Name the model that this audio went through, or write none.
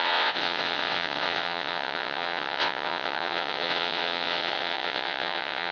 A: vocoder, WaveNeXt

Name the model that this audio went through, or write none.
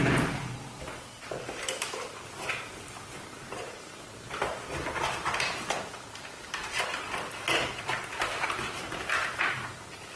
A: none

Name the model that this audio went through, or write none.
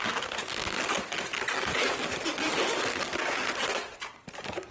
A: none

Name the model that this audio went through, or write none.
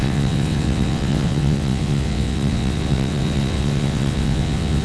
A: vocoder, WaveNeXt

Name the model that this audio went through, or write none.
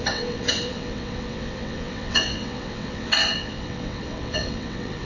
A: vocoder, WaveNeXt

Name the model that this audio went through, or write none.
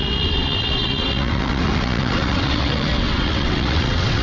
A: vocoder, WaveNeXt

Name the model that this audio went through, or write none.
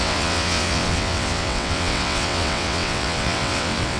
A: vocoder, WaveNeXt